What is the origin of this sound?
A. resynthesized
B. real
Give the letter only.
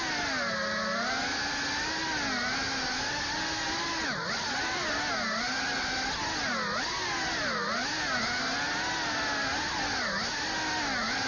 B